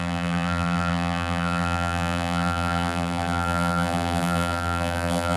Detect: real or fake fake